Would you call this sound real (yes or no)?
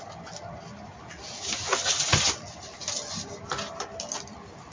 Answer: yes